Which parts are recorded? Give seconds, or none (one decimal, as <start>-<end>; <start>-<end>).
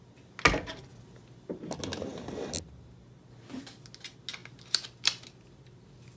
0.0-6.2